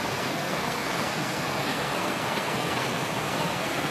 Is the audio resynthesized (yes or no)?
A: yes